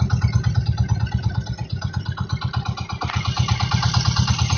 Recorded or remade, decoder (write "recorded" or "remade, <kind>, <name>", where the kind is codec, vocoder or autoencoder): recorded